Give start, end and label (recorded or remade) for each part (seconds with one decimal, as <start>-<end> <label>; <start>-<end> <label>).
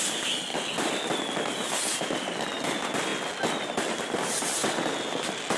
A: 0.0-3.1 remade; 3.1-3.8 recorded; 3.8-4.6 remade; 4.6-5.6 recorded